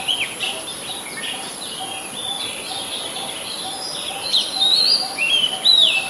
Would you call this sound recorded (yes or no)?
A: no